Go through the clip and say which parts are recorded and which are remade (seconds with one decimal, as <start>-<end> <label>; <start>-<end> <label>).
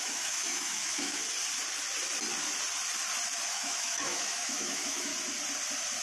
0.0-1.2 remade; 1.2-3.5 recorded; 3.5-5.1 remade; 5.1-6.0 recorded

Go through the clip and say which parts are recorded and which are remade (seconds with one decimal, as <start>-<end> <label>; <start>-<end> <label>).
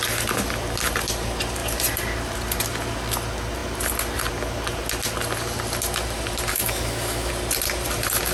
0.0-6.5 recorded; 6.5-7.3 remade; 7.3-8.3 recorded